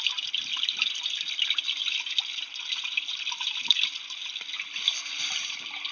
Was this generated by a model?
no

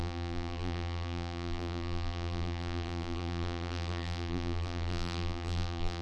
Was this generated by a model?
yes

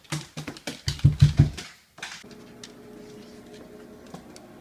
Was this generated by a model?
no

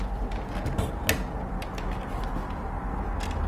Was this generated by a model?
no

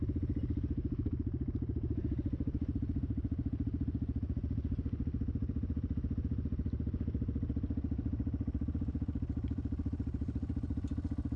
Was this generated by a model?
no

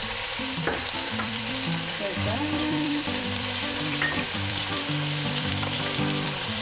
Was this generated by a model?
yes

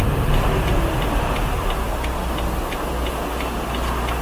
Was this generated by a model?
no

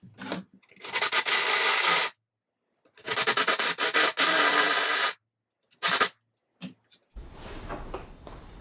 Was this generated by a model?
no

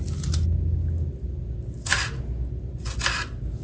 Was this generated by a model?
no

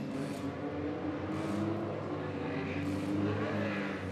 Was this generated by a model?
no